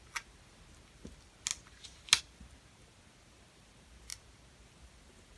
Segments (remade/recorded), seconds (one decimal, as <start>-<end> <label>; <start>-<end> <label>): 0.0-5.4 recorded